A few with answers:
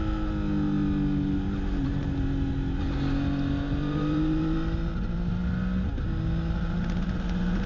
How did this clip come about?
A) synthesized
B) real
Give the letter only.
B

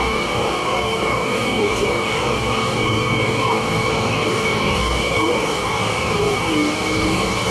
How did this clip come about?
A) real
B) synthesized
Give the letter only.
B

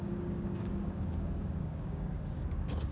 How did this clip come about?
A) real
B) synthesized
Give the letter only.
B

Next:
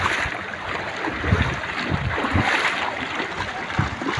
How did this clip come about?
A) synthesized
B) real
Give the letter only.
B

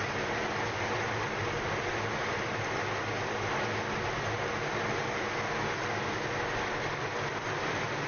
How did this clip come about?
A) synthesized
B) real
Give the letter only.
B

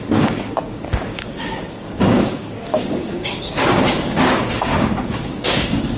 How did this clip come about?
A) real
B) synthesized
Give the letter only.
B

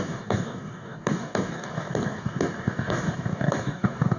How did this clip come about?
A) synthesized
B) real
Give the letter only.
A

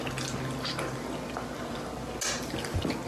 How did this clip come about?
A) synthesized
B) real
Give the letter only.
B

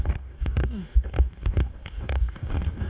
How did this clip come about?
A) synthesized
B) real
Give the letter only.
A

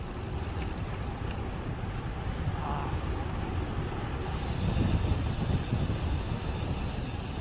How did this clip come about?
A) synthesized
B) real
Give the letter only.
B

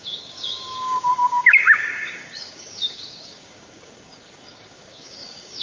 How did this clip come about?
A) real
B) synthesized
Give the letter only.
B